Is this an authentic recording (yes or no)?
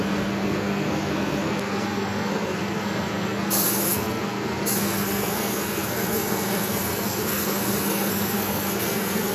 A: no